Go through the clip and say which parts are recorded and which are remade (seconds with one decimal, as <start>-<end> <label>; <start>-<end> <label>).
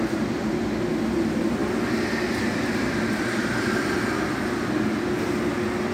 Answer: 0.0-5.9 recorded